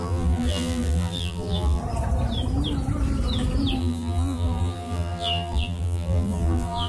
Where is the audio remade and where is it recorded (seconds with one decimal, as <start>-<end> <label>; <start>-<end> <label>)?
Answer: 0.0-1.8 remade; 1.8-3.8 recorded; 3.8-6.9 remade